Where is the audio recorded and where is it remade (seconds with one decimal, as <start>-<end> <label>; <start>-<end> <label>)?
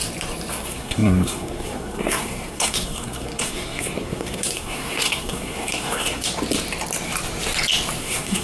0.0-0.5 recorded; 0.5-6.3 remade; 6.3-8.0 recorded; 8.0-8.4 remade